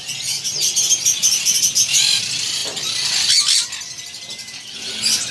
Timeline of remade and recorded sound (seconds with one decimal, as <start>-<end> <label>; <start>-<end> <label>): 0.0-5.3 recorded